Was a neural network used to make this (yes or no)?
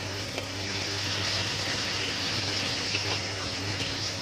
yes